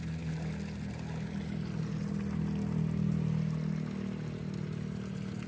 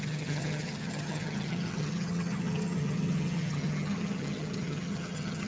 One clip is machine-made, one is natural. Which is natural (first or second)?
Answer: first